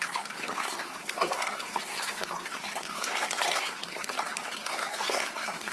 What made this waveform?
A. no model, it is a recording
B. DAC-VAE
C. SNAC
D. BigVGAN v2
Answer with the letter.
C